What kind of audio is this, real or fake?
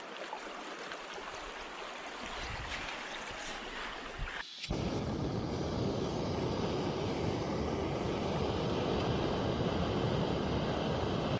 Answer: real